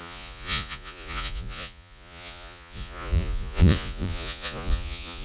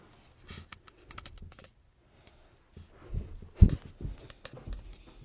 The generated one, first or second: first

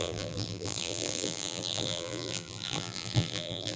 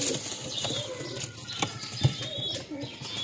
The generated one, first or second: first